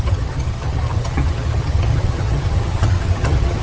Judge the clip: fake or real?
fake